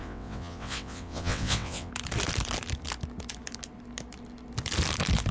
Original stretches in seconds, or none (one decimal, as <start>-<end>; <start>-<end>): 1.9-5.3